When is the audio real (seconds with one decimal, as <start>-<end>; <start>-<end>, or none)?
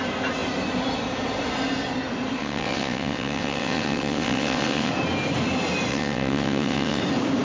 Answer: 0.0-2.4; 4.9-5.9; 7.0-7.4